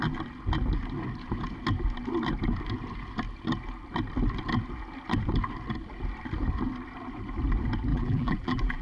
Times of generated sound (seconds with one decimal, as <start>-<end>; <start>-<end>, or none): 7.9-8.8